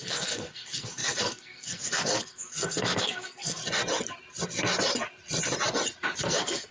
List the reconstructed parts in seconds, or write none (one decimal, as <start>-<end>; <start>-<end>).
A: 0.0-3.6; 6.2-6.7